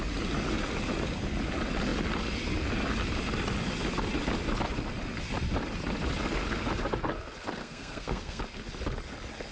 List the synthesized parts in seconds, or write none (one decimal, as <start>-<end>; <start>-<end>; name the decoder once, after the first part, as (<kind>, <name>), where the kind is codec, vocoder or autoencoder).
7.6-8.4 (codec, SNAC)